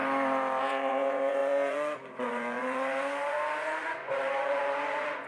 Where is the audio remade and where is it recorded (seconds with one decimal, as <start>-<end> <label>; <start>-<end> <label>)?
0.0-0.6 recorded; 0.6-5.3 remade